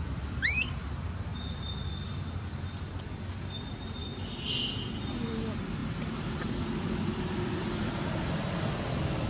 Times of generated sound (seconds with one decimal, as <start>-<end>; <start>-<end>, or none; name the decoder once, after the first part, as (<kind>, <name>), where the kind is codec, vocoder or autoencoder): none